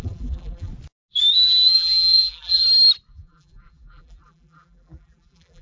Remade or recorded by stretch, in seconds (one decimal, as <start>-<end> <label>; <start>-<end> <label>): 0.0-0.7 remade; 0.7-1.3 recorded; 1.3-2.6 remade; 2.6-3.1 recorded; 3.1-5.6 remade